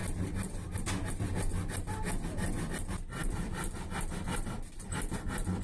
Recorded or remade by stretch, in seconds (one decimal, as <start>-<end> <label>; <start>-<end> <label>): 0.0-5.6 recorded